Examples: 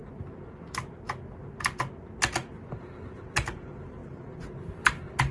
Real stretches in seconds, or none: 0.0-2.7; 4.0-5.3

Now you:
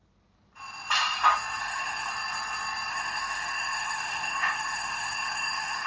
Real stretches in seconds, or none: 0.0-1.6; 2.1-2.9

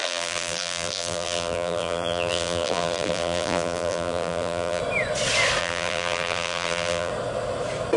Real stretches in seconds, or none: 4.8-5.6; 7.1-8.0